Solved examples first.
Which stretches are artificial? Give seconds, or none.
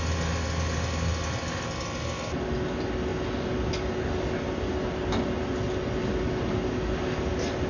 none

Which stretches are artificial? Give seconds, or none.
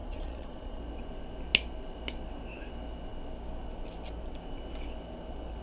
0.0-0.8 (vocoder, Vocos)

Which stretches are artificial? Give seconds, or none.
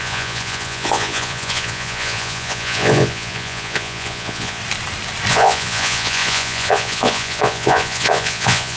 0.0-4.6 (vocoder, Vocos); 5.3-8.8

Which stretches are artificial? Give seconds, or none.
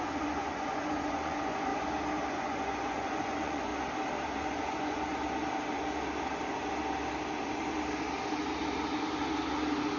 0.0-1.7 (vocoder, Vocos); 2.3-3.7; 4.3-5.1